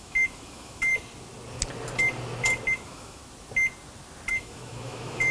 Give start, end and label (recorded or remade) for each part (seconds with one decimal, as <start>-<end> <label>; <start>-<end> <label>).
0.0-0.9 remade; 0.9-2.7 recorded; 2.7-3.2 remade; 3.2-4.3 recorded; 4.3-5.3 remade